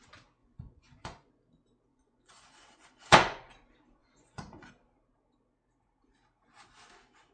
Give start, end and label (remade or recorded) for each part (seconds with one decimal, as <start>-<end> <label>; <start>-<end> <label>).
0.0-0.4 recorded; 0.4-1.3 remade; 1.3-1.9 recorded; 1.9-3.5 remade; 3.5-4.0 recorded; 4.0-4.7 remade; 4.7-7.3 recorded